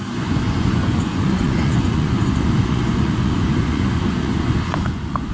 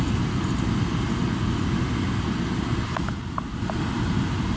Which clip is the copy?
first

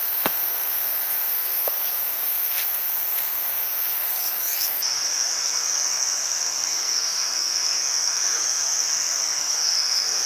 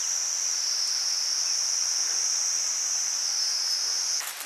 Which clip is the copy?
first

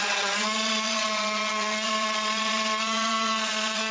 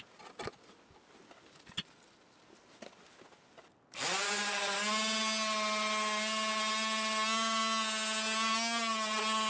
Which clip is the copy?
first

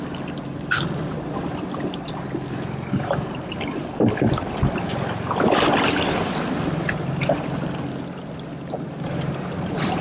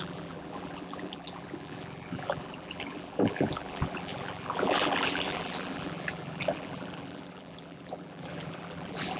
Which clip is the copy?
second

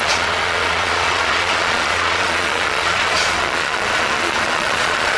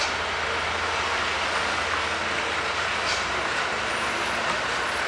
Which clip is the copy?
first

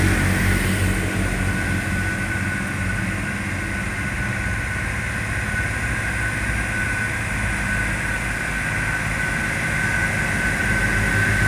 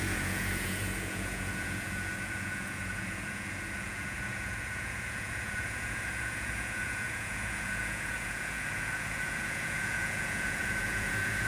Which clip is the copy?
second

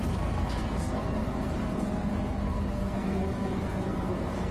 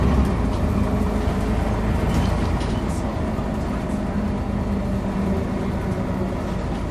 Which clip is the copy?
first